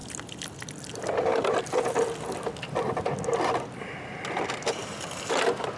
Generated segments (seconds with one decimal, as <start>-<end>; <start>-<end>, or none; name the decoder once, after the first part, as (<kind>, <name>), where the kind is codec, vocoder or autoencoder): none